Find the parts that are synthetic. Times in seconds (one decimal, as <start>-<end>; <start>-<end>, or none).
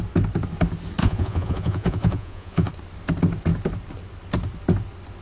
1.0-2.7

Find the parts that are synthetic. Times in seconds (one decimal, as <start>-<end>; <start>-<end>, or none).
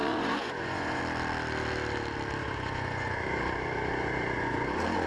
0.0-1.0; 2.4-5.1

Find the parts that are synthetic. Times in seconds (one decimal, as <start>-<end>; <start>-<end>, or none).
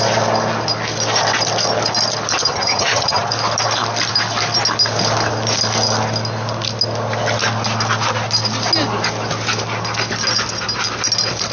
2.4-3.2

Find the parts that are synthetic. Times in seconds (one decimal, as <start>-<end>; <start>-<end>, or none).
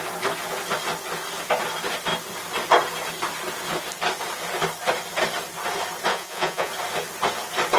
6.1-6.7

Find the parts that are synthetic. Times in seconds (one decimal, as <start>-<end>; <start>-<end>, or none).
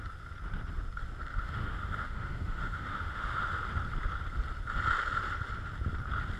1.3-3.4